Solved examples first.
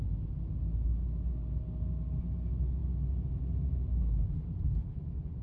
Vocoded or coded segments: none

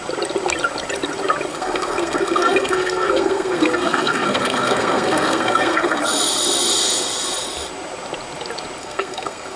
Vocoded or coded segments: 1.5-6.0 (codec, SNAC); 8.8-9.6

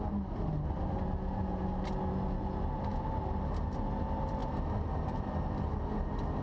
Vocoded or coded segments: none